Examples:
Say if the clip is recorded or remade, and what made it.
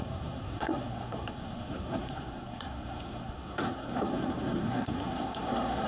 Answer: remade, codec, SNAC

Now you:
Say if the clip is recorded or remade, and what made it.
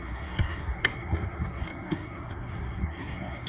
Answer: remade, codec, SNAC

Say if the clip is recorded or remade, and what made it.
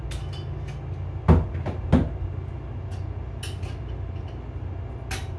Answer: recorded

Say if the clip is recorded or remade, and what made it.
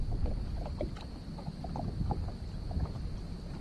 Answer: recorded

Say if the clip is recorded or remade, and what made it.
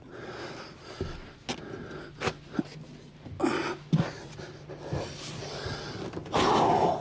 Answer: recorded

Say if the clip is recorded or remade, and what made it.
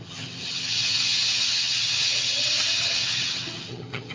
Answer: remade, vocoder, HiFi-GAN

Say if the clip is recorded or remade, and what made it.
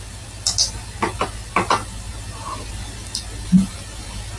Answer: recorded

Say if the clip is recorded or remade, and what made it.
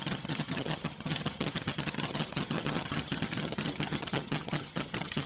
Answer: remade, vocoder, HiFi-GAN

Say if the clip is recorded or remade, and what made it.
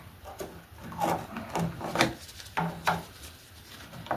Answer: recorded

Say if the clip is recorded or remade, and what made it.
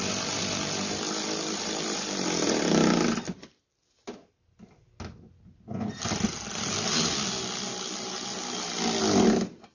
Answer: recorded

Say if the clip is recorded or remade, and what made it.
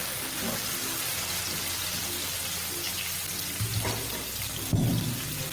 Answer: recorded